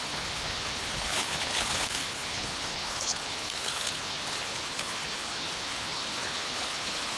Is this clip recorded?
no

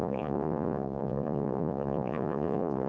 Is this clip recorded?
no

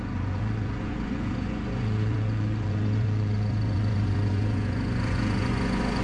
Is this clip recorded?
no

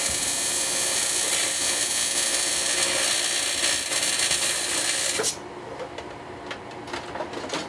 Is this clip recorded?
yes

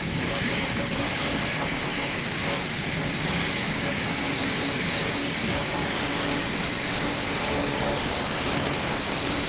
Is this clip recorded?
no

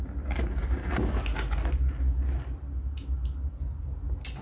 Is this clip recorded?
yes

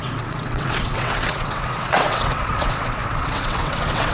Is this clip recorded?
no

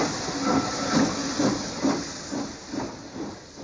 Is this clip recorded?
yes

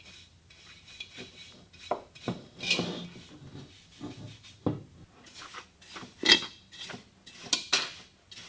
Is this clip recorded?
yes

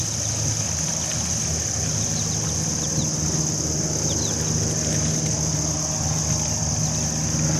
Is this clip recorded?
yes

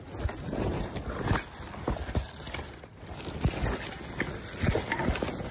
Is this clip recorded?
yes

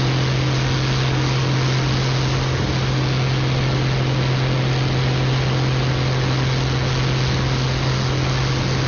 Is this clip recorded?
yes